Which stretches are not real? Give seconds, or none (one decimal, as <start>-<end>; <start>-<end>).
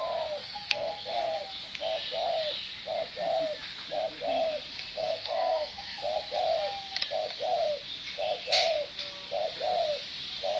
0.4-1.4; 5.0-6.0